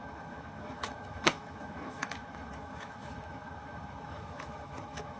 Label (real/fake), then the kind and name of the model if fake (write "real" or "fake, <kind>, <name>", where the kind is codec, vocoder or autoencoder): fake, autoencoder, DAC-VAE